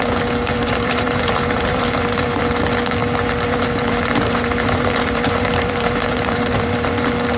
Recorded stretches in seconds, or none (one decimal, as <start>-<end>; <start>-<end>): 0.0-0.5; 2.4-3.0; 6.9-7.4